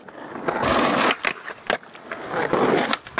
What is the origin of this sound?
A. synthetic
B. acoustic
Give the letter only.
B